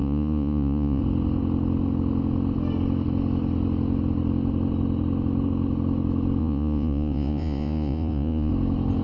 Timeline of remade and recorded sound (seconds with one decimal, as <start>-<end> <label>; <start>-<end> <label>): 0.0-1.0 remade; 1.0-6.4 recorded; 6.4-8.5 remade; 8.5-9.0 recorded